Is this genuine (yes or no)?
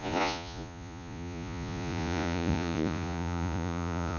no